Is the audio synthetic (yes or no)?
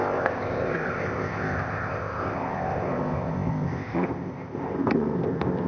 yes